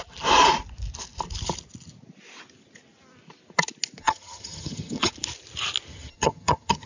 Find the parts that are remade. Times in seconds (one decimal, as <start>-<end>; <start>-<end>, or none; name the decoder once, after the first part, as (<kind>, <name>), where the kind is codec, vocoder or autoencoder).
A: 4.0-5.1 (vocoder, HiFi-GAN); 5.9-6.9